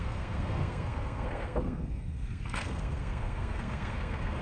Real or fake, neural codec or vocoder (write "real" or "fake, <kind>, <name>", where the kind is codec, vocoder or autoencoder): fake, codec, SNAC